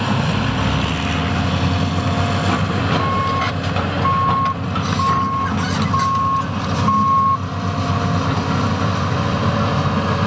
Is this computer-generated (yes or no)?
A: no